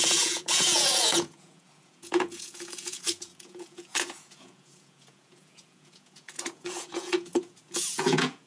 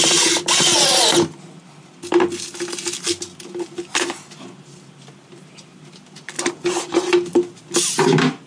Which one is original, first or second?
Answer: second